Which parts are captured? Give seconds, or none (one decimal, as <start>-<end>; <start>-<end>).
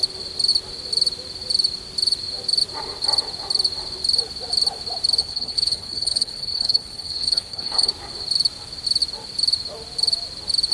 0.0-5.2; 7.9-10.7